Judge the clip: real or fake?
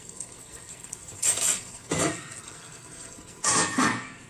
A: fake